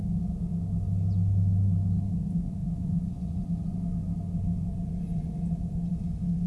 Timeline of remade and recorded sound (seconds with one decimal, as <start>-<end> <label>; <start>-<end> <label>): 0.0-2.6 recorded; 2.6-3.4 remade; 3.4-6.5 recorded

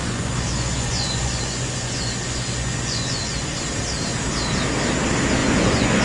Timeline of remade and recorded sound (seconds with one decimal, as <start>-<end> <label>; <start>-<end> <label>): 0.0-3.6 remade; 3.6-5.4 recorded; 5.4-6.0 remade

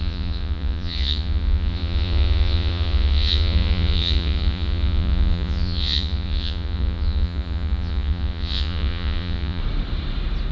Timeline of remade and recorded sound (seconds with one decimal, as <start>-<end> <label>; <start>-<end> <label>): 0.0-9.6 remade; 9.6-10.5 recorded

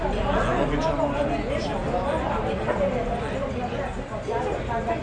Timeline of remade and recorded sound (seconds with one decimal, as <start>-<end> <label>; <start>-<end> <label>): 0.0-5.0 recorded